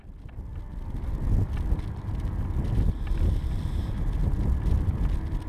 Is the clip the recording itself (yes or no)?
yes